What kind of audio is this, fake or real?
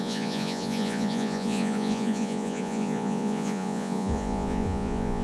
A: fake